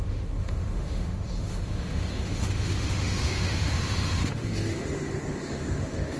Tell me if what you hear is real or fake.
fake